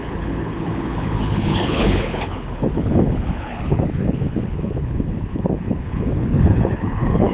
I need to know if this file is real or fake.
fake